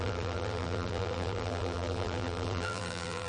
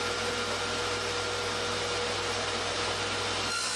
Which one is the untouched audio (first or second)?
second